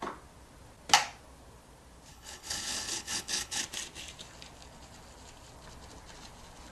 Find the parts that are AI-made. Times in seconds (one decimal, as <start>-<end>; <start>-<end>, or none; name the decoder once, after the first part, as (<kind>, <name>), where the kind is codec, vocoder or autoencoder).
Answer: 2.1-3.6 (codec, HILCodec)